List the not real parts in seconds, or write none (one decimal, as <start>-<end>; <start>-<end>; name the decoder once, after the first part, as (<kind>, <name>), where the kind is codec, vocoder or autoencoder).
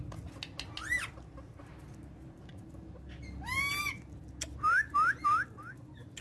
none